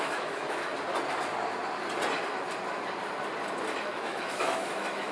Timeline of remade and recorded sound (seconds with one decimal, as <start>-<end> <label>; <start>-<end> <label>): 0.0-0.7 remade; 0.7-3.8 recorded; 3.8-5.1 remade